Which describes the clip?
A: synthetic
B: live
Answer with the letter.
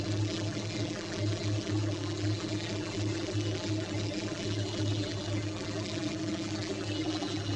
A